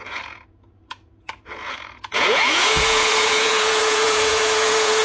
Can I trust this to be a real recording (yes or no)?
no